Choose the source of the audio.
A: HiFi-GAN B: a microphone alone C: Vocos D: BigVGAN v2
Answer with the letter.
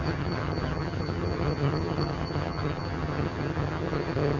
A